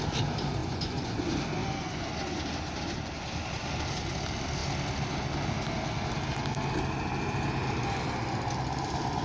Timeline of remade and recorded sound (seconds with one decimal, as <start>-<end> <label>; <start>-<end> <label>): 0.0-0.6 recorded; 0.6-1.2 remade; 1.2-1.6 recorded; 1.6-2.1 remade; 2.1-9.2 recorded

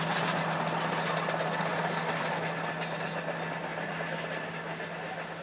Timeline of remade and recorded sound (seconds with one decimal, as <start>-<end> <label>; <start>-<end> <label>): 0.0-5.4 recorded

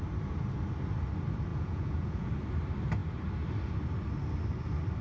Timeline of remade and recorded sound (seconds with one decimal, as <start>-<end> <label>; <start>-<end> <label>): 0.0-1.5 recorded; 1.5-2.3 remade; 2.3-5.0 recorded

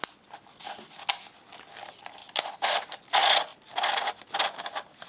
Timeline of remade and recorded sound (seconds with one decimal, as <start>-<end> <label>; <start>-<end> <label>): 0.0-5.1 recorded